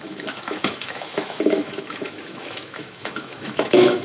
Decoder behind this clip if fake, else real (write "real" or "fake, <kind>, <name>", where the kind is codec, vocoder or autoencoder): fake, autoencoder, DAC-VAE